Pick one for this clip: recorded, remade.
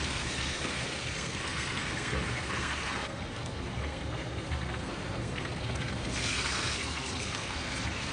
remade